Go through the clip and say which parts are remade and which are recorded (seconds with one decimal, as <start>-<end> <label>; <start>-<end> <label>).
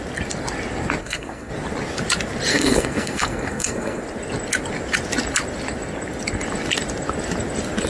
0.0-1.0 recorded; 1.0-1.5 remade; 1.5-2.5 recorded; 2.5-4.0 remade; 4.0-7.9 recorded